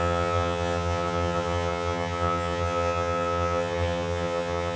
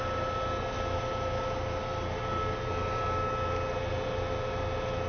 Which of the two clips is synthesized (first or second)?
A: first